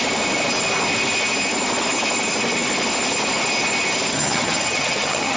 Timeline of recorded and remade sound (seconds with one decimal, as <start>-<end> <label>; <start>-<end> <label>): 0.0-4.1 recorded; 4.1-5.4 remade